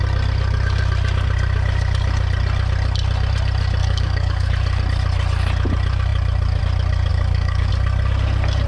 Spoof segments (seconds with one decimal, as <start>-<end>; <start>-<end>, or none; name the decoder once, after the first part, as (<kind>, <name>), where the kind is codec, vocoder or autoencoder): 3.8-4.5 (codec, DAC); 7.1-7.7